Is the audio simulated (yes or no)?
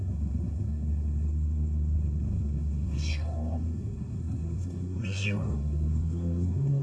yes